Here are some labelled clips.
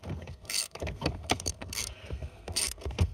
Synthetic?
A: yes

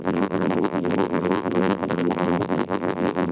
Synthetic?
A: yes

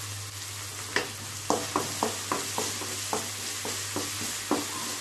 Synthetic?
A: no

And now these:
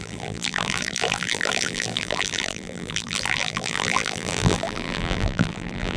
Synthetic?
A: yes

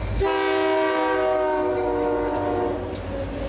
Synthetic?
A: no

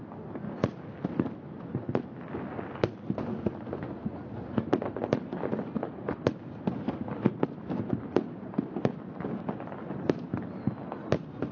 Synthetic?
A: no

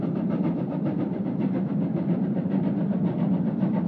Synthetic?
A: no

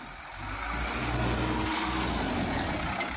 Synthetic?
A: no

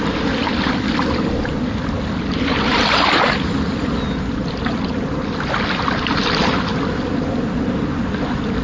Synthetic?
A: no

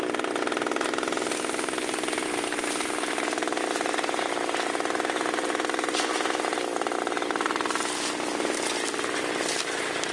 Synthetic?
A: no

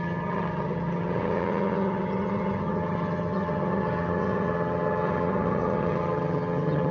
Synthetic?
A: yes